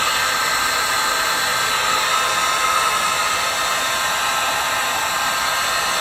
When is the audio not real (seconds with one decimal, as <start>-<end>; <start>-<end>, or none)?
none